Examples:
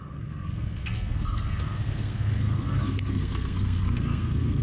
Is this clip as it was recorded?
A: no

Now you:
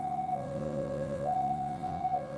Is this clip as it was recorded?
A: no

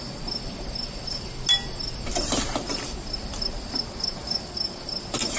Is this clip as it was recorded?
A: yes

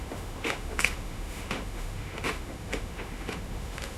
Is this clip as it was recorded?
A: no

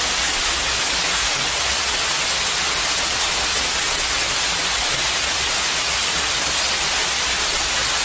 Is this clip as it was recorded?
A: yes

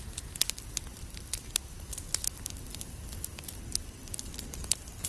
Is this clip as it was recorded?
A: yes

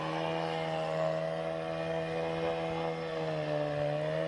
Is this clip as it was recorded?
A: yes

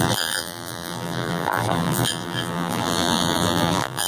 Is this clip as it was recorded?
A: no